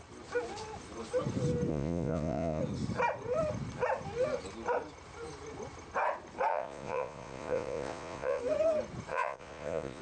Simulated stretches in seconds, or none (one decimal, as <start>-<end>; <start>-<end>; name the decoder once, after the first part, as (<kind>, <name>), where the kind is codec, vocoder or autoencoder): 1.7-2.6 (vocoder, Vocos); 6.5-8.4; 9.1-10.0